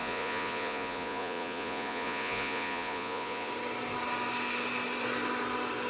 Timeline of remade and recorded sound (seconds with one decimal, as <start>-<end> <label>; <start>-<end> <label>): 0.0-3.5 remade; 3.5-5.9 recorded